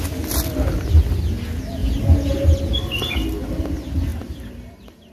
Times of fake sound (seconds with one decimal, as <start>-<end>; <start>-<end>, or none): 1.8-2.6; 4.1-5.1

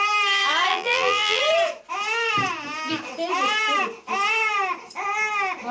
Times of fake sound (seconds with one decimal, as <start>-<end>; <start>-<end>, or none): 0.7-1.4

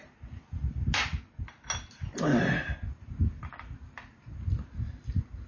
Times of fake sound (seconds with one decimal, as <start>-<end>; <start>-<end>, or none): none

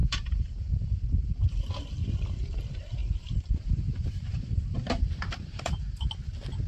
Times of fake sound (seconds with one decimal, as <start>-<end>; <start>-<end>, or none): 0.0-0.7; 3.0-6.1

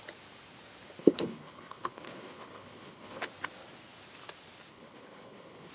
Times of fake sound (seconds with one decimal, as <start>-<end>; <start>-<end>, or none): 1.0-3.3; 4.7-5.7

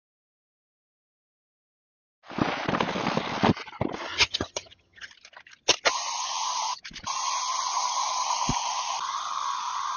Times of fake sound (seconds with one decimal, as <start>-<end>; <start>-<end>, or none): 4.1-5.1